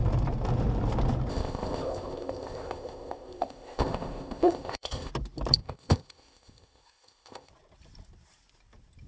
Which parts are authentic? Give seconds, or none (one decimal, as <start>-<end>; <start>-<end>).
0.0-1.3; 5.1-5.6; 7.5-9.1